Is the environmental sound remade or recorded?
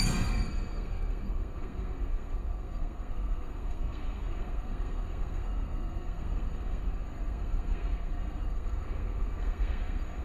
remade